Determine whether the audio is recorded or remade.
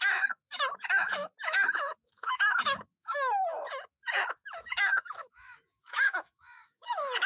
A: remade